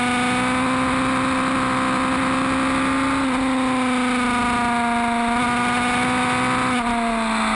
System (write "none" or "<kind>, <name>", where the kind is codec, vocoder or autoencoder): none